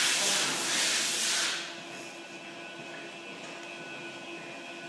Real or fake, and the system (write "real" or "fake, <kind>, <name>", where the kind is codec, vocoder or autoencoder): real